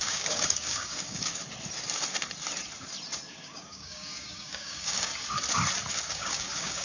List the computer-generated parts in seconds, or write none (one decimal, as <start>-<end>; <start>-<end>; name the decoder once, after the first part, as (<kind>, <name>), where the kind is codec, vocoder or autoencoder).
0.0-1.4 (codec, DAC); 3.3-5.1; 5.9-6.8